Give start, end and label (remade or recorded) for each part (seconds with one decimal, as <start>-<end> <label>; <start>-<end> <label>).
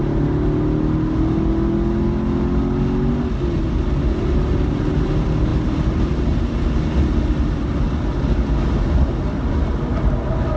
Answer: 0.0-10.6 recorded